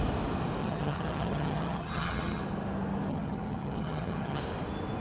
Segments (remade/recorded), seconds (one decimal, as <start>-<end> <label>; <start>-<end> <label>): 0.0-0.6 recorded; 0.6-2.4 remade; 2.4-3.1 recorded; 3.1-4.4 remade; 4.4-5.0 recorded